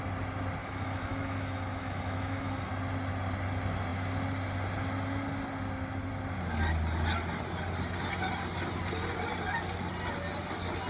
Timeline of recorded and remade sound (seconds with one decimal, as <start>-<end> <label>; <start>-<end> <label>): 0.0-0.6 recorded; 0.6-2.7 remade; 2.7-10.9 recorded